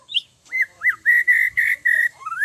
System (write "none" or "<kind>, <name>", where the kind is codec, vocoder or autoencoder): autoencoder, DAC-VAE